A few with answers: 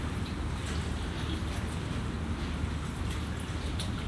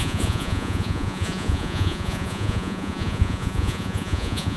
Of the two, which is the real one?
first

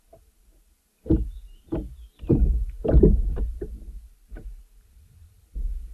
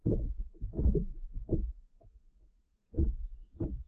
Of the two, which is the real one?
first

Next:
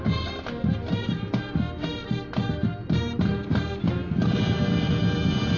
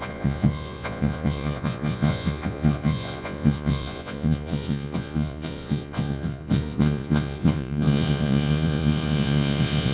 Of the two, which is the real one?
first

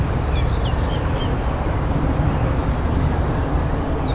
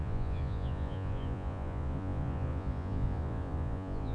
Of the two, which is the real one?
first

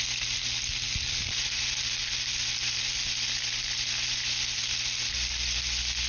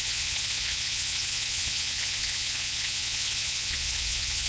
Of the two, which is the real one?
first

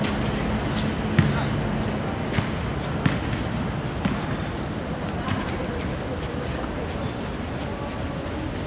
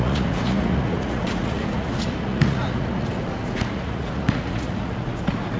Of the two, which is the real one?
first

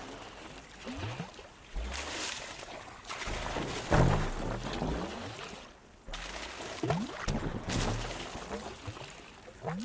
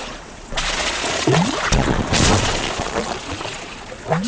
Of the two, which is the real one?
first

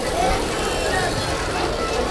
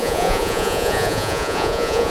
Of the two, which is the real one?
first